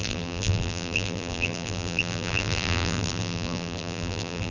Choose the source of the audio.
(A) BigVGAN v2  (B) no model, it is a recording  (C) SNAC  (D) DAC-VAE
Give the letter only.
A